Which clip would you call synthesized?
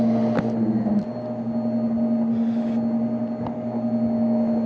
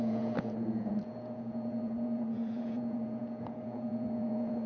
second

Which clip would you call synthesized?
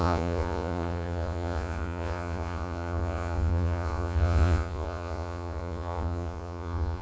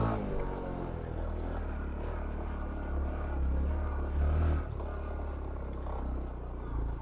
first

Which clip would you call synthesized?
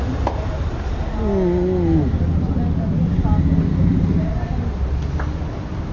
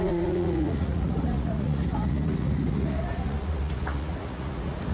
second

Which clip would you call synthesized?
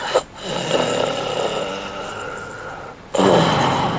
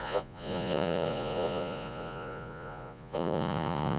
second